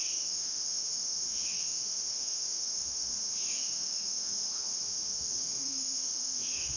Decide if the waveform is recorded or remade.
remade